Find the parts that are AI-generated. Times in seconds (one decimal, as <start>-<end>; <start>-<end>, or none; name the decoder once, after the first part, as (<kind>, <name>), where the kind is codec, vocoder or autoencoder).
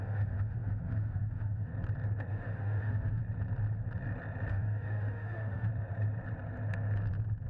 0.0-1.7 (autoencoder, DAC-VAE); 2.3-3.2; 4.5-5.7